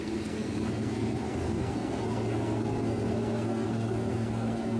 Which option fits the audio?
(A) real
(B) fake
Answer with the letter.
B